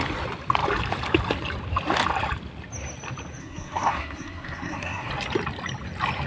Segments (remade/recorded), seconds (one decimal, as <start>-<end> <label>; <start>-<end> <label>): 0.0-3.4 recorded; 3.4-5.1 remade; 5.1-6.3 recorded